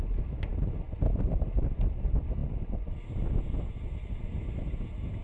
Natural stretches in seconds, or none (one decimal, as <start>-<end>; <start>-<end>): 0.0-5.2